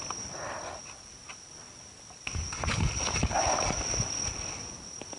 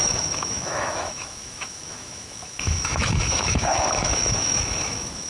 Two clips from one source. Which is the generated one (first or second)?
second